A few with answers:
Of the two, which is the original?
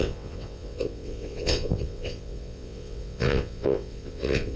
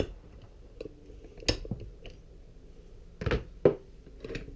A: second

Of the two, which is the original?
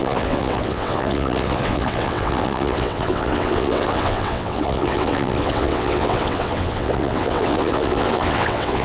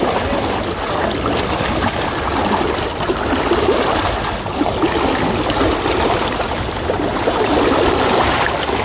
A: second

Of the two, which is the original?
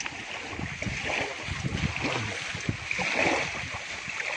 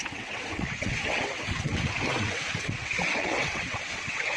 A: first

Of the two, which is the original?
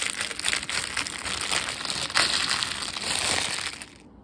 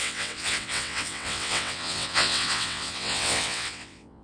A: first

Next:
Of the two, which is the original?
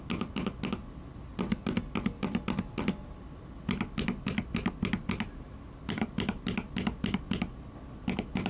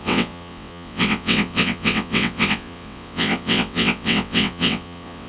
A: first